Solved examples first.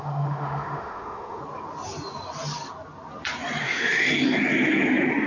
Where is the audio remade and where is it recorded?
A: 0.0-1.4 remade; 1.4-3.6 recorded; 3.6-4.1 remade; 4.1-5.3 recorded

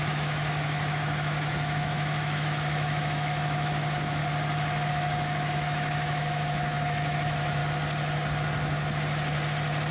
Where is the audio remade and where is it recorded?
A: 0.0-4.2 remade; 4.2-4.9 recorded; 4.9-7.6 remade; 7.6-9.9 recorded